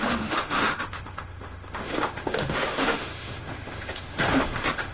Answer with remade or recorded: remade